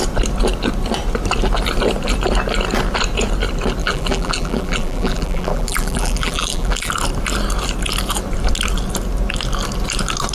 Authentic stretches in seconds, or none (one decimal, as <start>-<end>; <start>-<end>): 0.0-3.8; 6.9-10.3